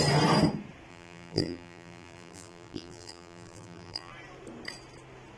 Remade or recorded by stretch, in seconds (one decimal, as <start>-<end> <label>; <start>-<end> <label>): 0.0-0.9 recorded; 0.9-4.1 remade; 4.1-5.4 recorded